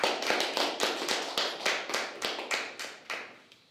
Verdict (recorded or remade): recorded